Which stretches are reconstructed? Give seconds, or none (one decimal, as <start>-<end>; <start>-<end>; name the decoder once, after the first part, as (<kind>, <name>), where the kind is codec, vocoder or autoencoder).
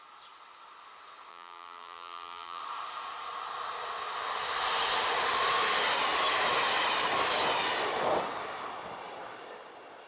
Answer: 1.3-2.6 (vocoder, BigVGAN v2)